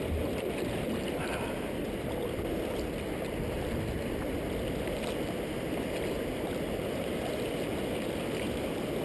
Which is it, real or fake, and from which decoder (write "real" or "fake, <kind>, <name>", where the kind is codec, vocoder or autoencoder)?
real